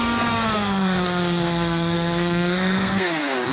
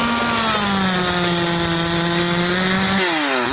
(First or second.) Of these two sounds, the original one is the second